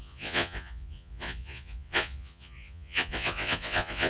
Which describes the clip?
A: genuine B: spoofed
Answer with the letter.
B